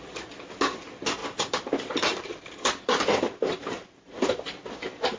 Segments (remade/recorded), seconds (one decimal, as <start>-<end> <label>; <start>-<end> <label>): 0.0-1.2 recorded; 1.2-4.3 remade; 4.3-5.2 recorded